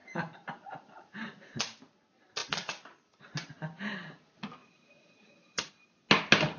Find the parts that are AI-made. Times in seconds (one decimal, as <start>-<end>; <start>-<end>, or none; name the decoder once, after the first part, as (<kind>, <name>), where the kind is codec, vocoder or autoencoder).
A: 0.0-1.3 (vocoder, BigVGAN v2); 2.4-3.3; 4.6-5.7